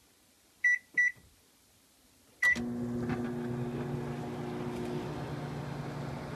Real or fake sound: real